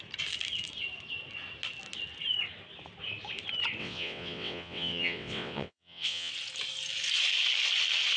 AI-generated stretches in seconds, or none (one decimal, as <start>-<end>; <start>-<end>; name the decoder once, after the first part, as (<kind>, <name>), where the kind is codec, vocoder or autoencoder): 3.8-6.3 (vocoder, WaveNeXt)